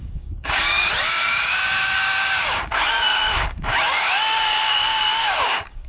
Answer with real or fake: fake